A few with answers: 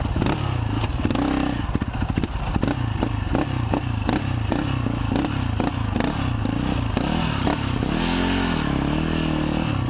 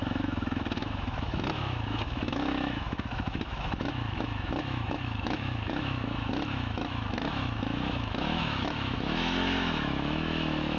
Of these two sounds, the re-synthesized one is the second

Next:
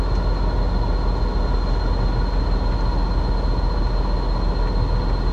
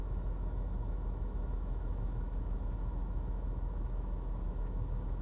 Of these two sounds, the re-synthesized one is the second